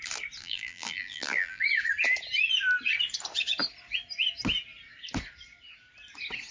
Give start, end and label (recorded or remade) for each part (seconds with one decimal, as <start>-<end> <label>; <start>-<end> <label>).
0.0-0.4 recorded; 0.4-1.6 remade; 1.6-6.5 recorded